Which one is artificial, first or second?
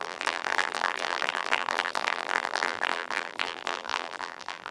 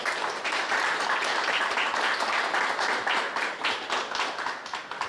first